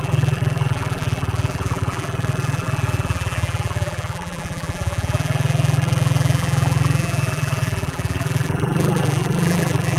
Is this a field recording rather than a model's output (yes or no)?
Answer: no